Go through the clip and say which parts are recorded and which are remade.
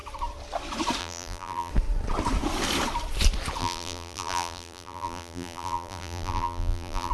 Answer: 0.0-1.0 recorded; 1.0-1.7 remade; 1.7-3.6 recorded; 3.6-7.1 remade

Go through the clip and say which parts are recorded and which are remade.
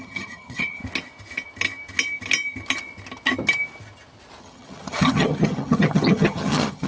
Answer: 0.0-0.8 remade; 0.8-4.4 recorded; 4.4-6.9 remade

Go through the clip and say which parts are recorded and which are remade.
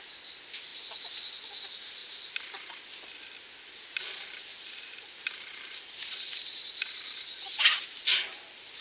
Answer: 0.0-2.0 recorded; 2.0-2.8 remade; 2.8-4.5 recorded; 4.5-6.9 remade; 6.9-8.8 recorded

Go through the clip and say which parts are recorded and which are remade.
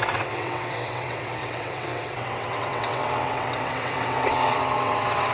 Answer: 0.0-5.3 remade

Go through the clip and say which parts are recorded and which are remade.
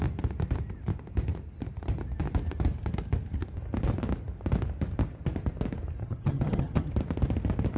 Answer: 0.0-6.0 recorded; 6.0-6.9 remade; 6.9-7.8 recorded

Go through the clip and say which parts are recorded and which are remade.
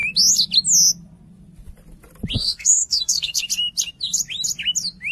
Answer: 0.0-2.4 recorded; 2.4-3.4 remade; 3.4-5.1 recorded